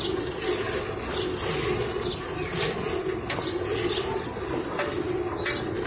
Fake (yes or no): no